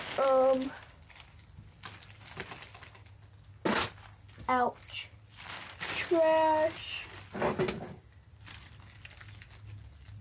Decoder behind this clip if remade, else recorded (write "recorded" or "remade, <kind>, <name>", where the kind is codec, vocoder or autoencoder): recorded